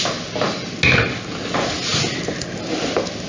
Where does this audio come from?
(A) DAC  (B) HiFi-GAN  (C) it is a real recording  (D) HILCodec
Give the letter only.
C